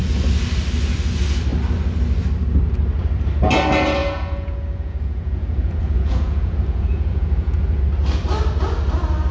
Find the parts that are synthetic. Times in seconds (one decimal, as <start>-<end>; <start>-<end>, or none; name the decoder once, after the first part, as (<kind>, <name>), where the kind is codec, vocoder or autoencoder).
4.0-7.8 (vocoder, Vocos)